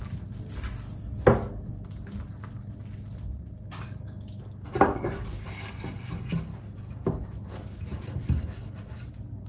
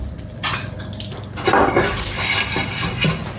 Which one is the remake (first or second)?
second